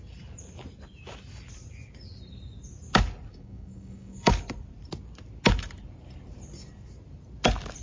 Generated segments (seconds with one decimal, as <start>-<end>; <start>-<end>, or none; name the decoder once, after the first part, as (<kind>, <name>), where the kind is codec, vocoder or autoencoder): 3.3-4.3 (codec, DAC)